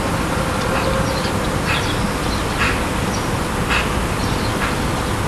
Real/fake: real